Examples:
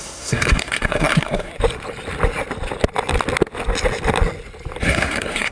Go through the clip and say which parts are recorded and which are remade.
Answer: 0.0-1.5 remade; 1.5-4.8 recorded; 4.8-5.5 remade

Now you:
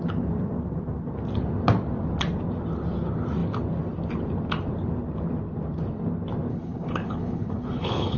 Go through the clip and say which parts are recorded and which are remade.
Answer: 0.0-6.5 recorded; 6.5-8.2 remade